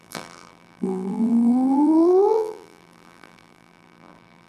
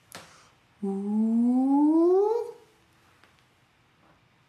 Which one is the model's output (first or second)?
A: first